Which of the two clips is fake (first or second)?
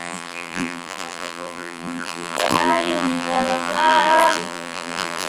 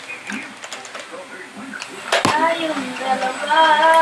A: first